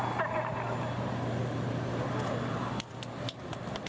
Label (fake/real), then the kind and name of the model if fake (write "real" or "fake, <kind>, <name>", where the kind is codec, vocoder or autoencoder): real